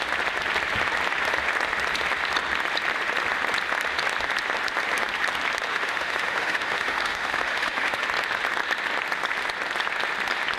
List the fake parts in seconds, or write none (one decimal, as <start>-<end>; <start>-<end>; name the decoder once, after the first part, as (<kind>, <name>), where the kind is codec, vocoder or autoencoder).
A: 5.7-8.0 (autoencoder, DAC-VAE)